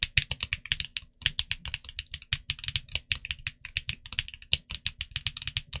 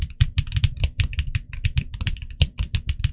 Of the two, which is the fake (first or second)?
second